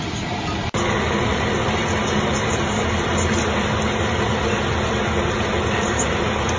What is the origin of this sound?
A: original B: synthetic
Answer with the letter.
A